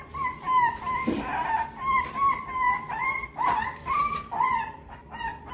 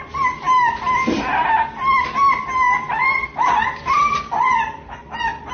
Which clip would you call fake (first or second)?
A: first